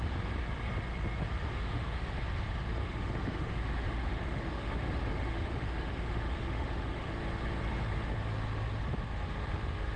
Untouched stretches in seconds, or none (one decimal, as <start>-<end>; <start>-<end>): 0.0-1.4; 2.2-2.8; 7.1-10.0